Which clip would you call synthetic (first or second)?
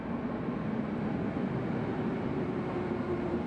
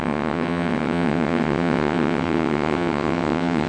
second